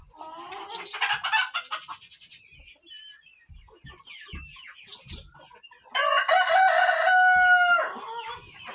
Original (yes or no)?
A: yes